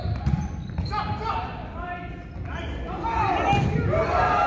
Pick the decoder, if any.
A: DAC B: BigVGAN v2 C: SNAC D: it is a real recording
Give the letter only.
D